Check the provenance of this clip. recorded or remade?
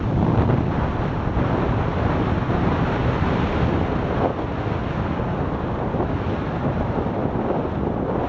recorded